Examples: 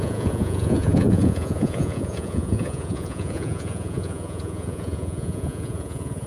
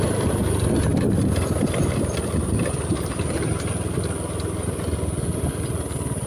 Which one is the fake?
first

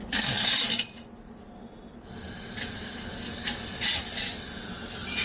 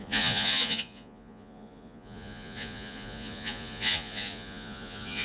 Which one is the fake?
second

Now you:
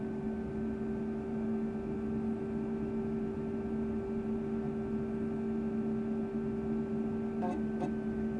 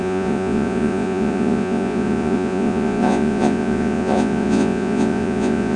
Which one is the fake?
second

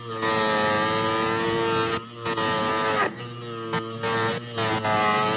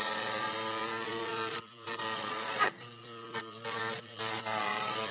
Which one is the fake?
second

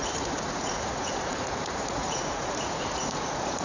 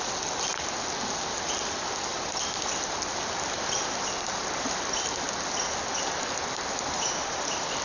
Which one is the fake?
first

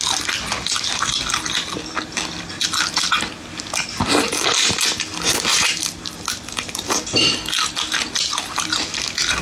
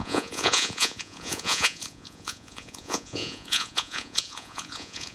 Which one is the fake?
second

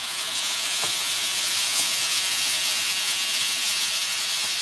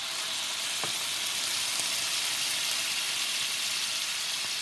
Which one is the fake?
first